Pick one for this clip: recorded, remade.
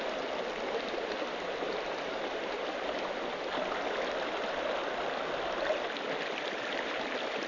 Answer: recorded